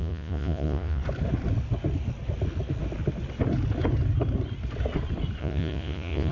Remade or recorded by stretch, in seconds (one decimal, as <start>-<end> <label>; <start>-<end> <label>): 0.0-1.0 remade; 1.0-5.4 recorded; 5.4-6.3 remade

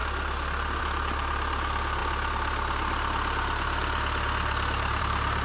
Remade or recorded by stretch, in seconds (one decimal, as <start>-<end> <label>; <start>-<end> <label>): 0.0-5.4 recorded

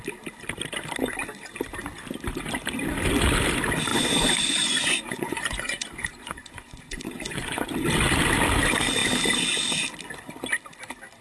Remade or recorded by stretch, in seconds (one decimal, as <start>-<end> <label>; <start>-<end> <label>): 0.0-3.9 recorded; 3.9-7.7 remade; 7.7-11.2 recorded

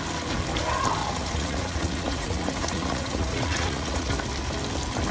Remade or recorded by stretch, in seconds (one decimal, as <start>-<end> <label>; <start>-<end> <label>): 0.0-1.0 recorded; 1.0-4.1 remade; 4.1-5.1 recorded

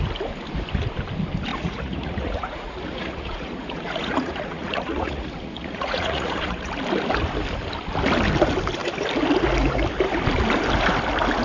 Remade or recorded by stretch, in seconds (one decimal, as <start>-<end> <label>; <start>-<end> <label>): 0.0-1.5 recorded; 1.5-6.7 remade; 6.7-11.4 recorded

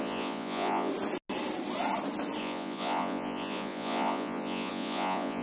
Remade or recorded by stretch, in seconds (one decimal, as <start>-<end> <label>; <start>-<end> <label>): 0.0-0.9 remade; 0.9-2.4 recorded; 2.4-5.4 remade

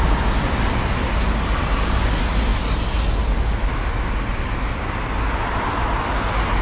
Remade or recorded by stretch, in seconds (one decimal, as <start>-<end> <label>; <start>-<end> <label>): 0.0-6.6 recorded